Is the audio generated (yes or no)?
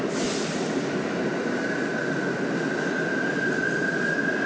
no